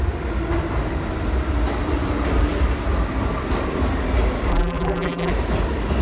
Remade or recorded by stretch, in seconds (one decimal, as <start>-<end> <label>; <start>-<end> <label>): 0.0-4.5 recorded; 4.5-5.3 remade; 5.3-6.0 recorded